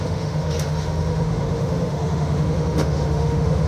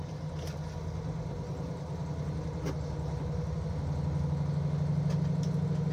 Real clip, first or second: second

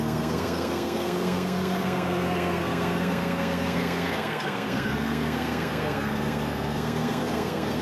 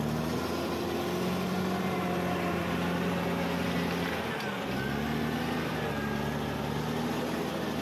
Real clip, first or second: second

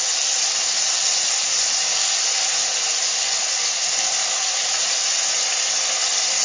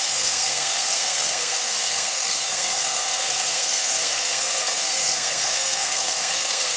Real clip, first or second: first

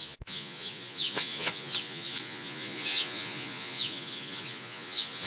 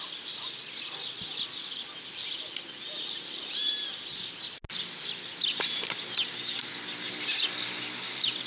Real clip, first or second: second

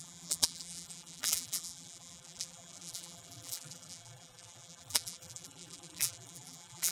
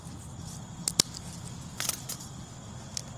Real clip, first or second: second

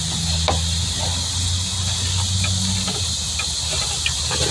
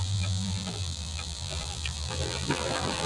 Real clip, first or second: first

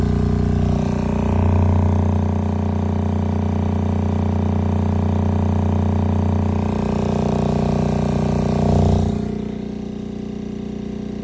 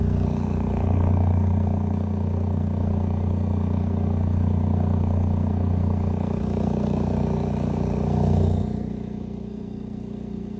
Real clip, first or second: first